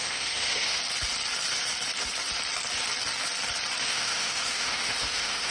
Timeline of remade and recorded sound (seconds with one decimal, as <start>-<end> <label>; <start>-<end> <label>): 0.0-0.8 remade; 0.8-3.8 recorded; 3.8-5.5 remade